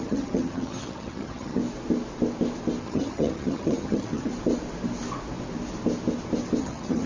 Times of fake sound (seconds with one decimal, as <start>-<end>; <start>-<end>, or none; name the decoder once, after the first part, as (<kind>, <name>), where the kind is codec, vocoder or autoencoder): 0.0-1.6 (vocoder, HiFi-GAN); 2.8-4.3; 6.6-7.1